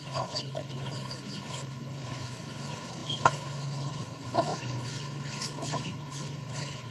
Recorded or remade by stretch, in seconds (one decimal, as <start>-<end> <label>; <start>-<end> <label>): 0.0-6.9 remade